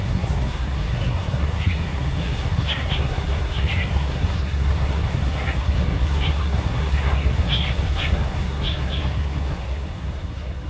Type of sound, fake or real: fake